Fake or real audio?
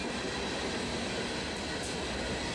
real